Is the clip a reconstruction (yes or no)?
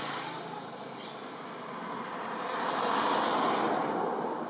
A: no